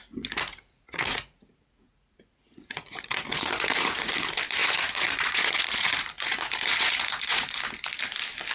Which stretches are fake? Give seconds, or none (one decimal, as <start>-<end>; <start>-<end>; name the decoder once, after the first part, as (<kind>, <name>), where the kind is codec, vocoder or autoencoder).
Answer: 0.0-4.1 (vocoder, Vocos); 4.6-7.6